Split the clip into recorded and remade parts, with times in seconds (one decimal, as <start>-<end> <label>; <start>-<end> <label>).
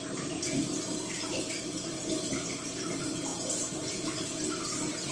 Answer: 0.0-5.1 recorded